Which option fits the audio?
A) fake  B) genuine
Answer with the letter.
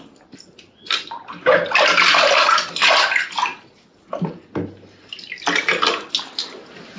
B